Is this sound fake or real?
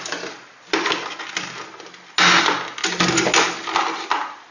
real